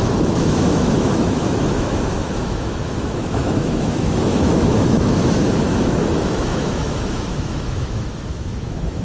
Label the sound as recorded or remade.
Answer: remade